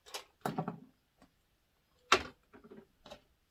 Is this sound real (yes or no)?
yes